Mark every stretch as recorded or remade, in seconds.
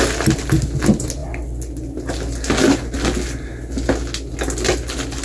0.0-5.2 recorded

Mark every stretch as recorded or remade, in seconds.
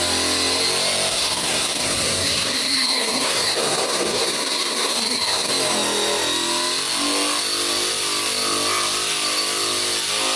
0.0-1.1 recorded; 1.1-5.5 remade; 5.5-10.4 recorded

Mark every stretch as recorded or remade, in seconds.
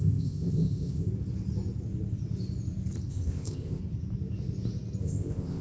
0.0-1.1 remade; 1.1-3.1 recorded; 3.1-3.8 remade; 3.8-5.0 recorded; 5.0-5.6 remade